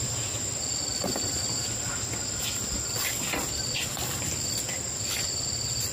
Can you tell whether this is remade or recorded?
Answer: recorded